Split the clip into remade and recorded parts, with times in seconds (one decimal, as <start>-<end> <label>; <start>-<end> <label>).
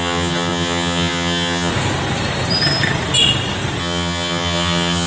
0.0-1.7 remade; 1.7-3.8 recorded; 3.8-5.1 remade